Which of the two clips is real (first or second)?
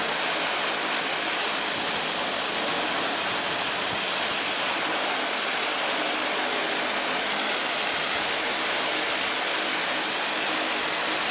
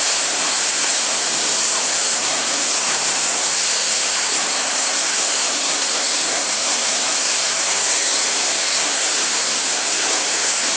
first